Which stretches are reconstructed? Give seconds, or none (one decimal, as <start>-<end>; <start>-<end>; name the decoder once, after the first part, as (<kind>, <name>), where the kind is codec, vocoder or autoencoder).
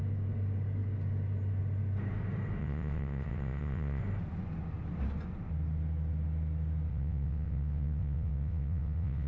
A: 2.6-4.0 (vocoder, WaveNeXt); 6.9-9.3